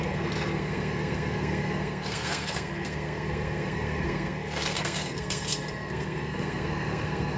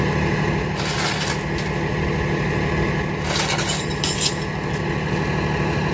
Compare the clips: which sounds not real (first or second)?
first